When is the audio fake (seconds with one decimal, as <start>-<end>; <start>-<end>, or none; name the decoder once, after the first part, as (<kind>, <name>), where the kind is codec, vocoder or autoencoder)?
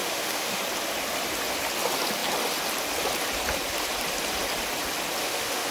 0.0-0.6 (autoencoder, DAC-VAE); 5.2-5.7